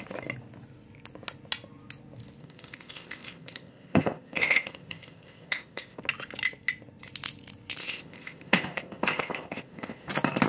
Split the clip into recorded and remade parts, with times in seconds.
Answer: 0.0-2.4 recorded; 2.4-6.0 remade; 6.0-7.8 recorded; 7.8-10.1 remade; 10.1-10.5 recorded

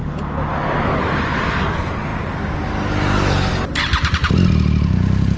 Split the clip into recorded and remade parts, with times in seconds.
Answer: 0.0-5.4 recorded

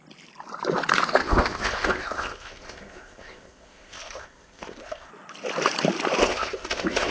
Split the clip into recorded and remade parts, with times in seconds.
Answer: 0.0-1.2 recorded; 1.2-5.1 remade; 5.1-6.2 recorded; 6.2-7.1 remade